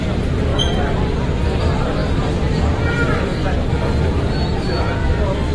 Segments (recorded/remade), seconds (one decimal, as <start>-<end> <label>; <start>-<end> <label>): 0.0-0.5 remade; 0.5-1.6 recorded; 1.6-3.3 remade; 3.3-5.5 recorded

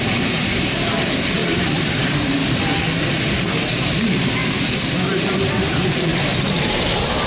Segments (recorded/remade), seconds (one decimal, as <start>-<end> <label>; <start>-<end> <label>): 0.0-2.4 remade; 2.4-3.6 recorded; 3.6-7.3 remade

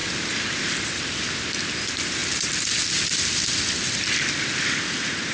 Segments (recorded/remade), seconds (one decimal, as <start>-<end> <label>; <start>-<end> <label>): 0.0-1.3 remade; 1.3-2.2 recorded; 2.2-2.8 remade; 2.8-5.3 recorded